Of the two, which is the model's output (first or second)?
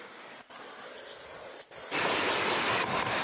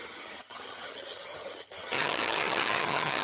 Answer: second